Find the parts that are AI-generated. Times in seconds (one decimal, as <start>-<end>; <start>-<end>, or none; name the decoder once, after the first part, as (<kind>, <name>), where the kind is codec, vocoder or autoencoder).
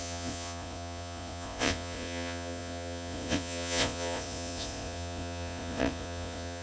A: 0.0-6.6 (vocoder, Vocos)